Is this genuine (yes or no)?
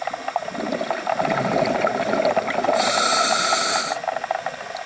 yes